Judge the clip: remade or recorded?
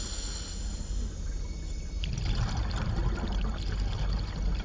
recorded